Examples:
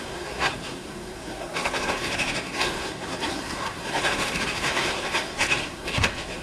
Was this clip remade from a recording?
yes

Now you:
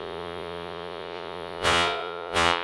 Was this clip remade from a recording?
yes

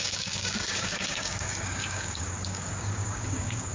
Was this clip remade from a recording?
yes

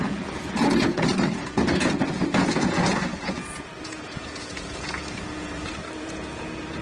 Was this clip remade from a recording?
yes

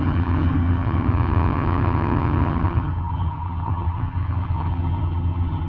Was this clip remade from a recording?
yes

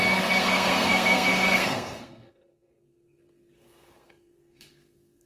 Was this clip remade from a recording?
yes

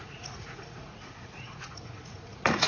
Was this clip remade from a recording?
yes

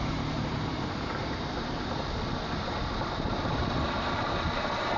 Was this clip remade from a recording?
yes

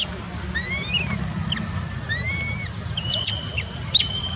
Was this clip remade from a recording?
no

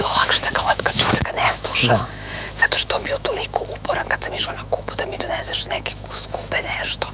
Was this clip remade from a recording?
yes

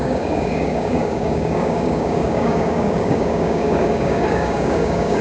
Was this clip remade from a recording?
yes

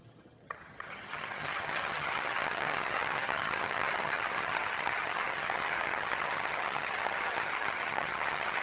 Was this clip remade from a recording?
yes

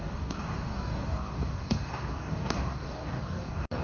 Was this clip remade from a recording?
yes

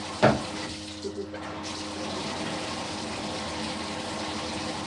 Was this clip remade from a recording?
no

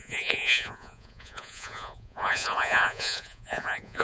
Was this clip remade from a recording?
yes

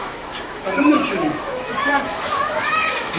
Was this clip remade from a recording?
yes